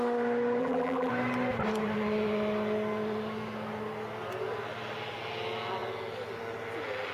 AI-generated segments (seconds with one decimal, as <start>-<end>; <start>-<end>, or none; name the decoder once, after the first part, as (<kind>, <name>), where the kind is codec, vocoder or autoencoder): 0.6-1.1 (vocoder, BigVGAN v2)